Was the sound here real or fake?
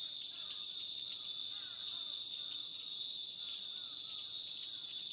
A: real